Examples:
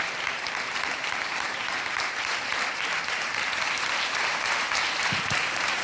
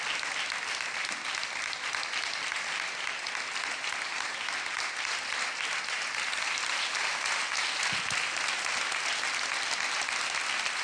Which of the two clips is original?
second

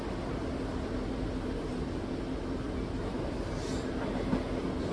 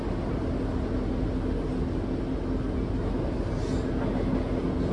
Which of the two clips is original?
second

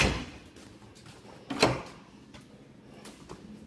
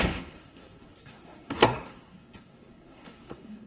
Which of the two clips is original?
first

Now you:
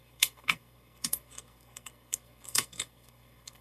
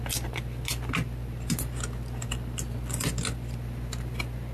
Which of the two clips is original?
second